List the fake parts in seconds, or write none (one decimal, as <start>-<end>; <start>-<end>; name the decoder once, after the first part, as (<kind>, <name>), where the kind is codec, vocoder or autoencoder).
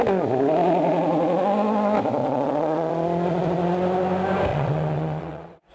2.2-2.9 (vocoder, WaveNeXt); 4.5-5.7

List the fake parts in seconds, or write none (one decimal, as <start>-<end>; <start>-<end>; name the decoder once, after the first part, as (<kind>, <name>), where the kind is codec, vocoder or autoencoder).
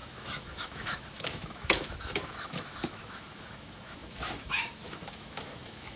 0.0-6.0 (autoencoder, DAC-VAE)